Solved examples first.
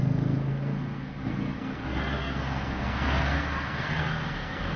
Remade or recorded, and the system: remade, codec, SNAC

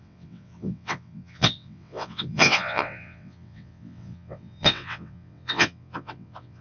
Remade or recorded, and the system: remade, vocoder, WaveNeXt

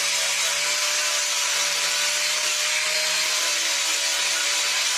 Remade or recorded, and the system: recorded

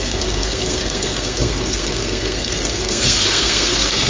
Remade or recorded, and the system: remade, codec, SNAC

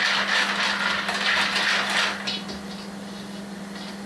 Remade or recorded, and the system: recorded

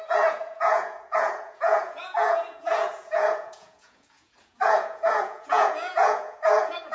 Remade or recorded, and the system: remade, vocoder, Vocos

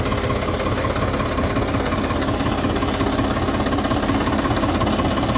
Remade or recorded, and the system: recorded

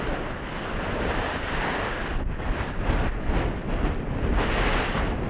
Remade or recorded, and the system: recorded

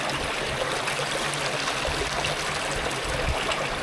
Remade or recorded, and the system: recorded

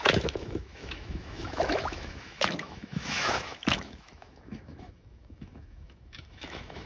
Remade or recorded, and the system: remade, autoencoder, DAC-VAE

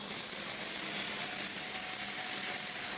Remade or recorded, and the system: remade, vocoder, BigVGAN v2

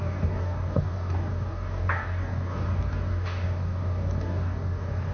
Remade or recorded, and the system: remade, codec, DAC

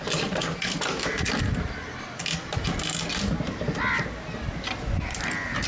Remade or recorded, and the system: recorded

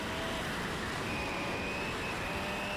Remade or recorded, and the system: recorded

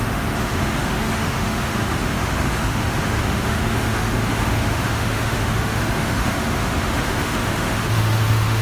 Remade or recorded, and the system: remade, autoencoder, DAC-VAE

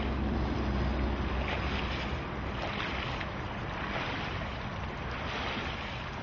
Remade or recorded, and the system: recorded